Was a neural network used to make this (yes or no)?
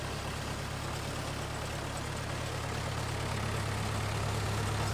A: no